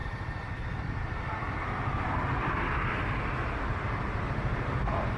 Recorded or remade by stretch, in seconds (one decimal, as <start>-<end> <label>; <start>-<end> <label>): 0.0-2.9 remade; 2.9-5.2 recorded